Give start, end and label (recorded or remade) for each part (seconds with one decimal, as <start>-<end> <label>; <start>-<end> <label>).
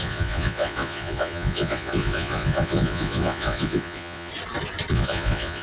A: 0.0-4.3 remade; 4.3-4.9 recorded; 4.9-5.6 remade